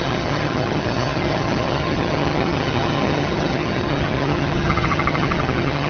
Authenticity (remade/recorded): remade